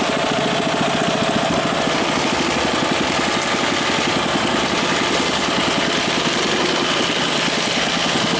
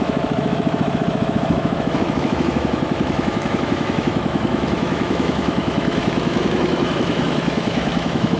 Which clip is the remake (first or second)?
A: second